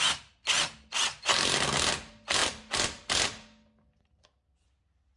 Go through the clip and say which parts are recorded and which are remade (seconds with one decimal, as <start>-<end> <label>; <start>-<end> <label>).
0.0-5.2 recorded

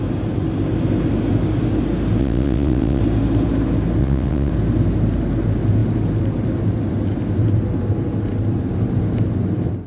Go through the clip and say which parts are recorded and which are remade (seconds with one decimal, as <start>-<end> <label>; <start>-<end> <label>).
0.0-2.2 recorded; 2.2-3.0 remade; 3.0-4.0 recorded; 4.0-4.5 remade; 4.5-9.9 recorded

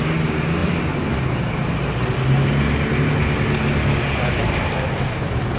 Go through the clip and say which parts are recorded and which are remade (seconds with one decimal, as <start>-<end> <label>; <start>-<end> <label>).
0.0-5.6 recorded

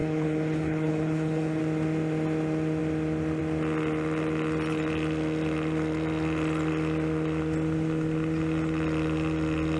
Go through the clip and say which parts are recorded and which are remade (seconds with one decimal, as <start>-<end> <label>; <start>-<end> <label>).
0.0-1.6 remade; 1.6-9.8 recorded

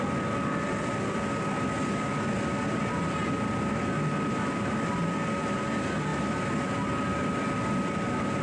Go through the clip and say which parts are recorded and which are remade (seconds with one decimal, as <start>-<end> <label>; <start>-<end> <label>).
0.0-8.4 recorded

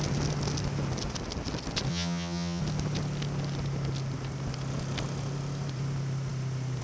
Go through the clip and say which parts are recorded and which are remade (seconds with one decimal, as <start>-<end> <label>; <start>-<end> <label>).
0.0-1.9 recorded; 1.9-2.6 remade; 2.6-6.8 recorded

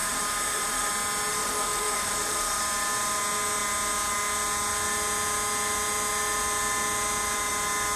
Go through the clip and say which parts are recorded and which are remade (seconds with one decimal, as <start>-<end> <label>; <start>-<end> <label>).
0.0-0.9 remade; 0.9-1.3 recorded; 1.3-2.6 remade; 2.6-8.0 recorded